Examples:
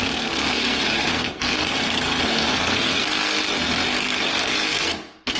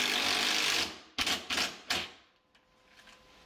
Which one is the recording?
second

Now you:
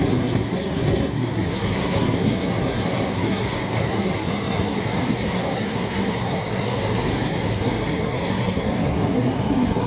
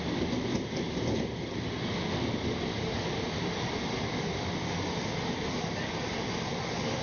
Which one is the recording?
second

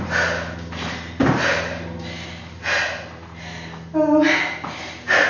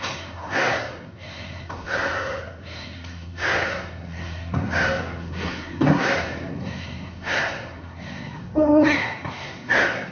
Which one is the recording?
first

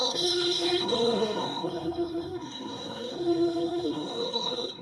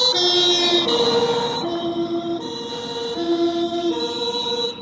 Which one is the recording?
second